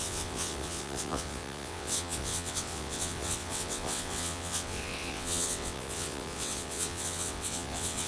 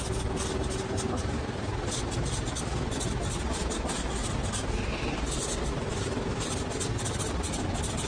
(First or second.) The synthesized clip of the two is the first